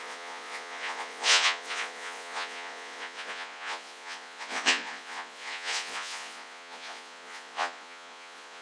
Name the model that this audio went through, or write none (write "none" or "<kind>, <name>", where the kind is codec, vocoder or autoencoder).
vocoder, Vocos